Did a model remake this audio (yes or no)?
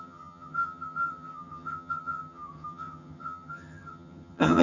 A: yes